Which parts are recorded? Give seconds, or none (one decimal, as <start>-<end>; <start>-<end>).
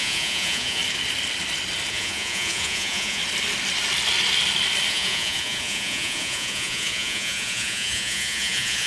0.8-1.9; 3.2-4.9